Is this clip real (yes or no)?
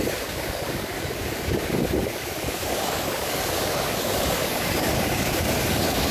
no